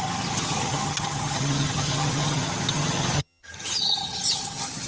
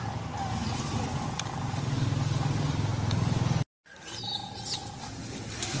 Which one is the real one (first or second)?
second